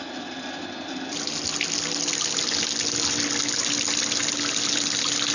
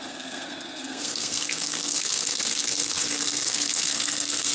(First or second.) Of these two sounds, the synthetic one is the second